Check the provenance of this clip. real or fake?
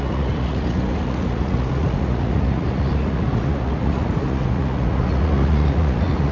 fake